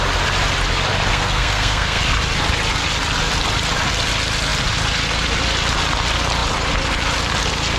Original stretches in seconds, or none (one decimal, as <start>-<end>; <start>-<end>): 0.0-1.1; 2.0-7.8